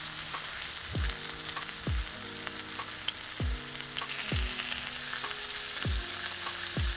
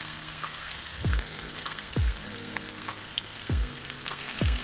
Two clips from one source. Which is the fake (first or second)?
second